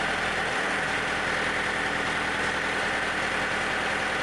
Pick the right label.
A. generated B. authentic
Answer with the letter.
A